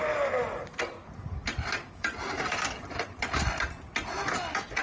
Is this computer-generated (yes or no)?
no